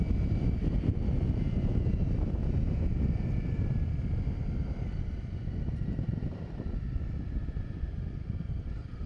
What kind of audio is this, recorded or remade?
remade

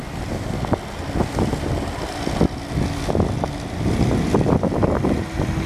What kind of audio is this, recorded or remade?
recorded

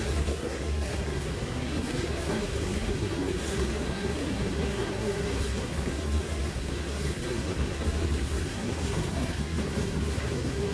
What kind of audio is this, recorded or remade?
remade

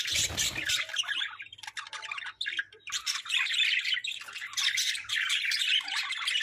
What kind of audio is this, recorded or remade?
remade